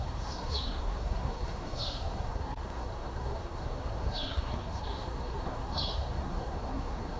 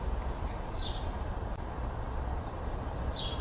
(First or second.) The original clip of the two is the second